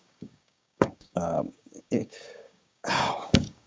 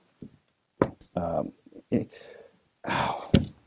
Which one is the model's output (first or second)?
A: first